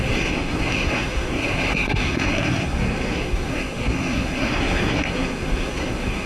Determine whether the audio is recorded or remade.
remade